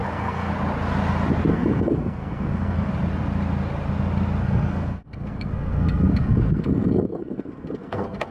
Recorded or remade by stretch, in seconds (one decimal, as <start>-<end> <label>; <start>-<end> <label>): 0.0-0.5 remade; 0.5-1.5 recorded; 1.5-2.9 remade; 2.9-4.4 recorded; 4.4-8.3 remade

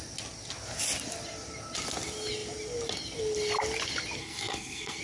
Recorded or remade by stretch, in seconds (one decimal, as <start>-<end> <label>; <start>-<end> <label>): 0.0-4.2 recorded; 4.2-5.0 remade

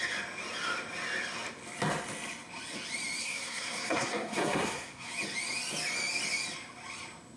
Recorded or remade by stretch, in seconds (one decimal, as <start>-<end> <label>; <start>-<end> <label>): 0.0-3.2 recorded; 3.2-5.1 remade; 5.1-7.4 recorded

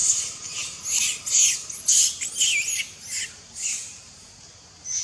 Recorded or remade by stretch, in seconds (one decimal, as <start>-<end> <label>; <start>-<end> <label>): 0.0-5.0 recorded

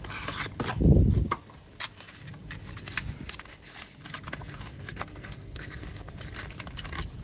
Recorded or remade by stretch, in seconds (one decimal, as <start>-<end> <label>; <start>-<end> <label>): 0.0-4.7 recorded; 4.7-6.1 remade; 6.1-7.2 recorded

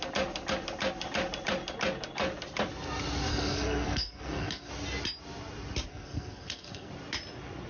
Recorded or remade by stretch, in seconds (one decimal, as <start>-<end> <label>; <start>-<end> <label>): 0.0-3.3 recorded; 3.3-4.7 remade; 4.7-5.9 recorded; 5.9-6.9 remade; 6.9-7.7 recorded

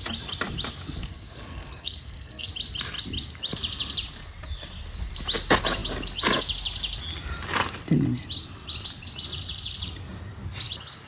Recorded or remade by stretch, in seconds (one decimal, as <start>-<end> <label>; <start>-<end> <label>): 0.0-1.1 recorded; 1.1-2.5 remade; 2.5-11.1 recorded

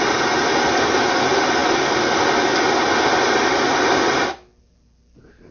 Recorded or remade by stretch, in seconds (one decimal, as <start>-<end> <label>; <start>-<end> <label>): 0.0-5.5 recorded